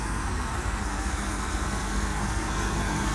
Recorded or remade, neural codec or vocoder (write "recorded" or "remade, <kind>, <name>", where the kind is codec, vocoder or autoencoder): remade, codec, SNAC